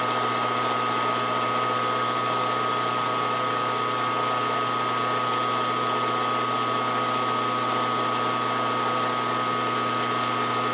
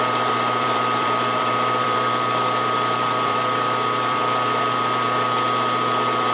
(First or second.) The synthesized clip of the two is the second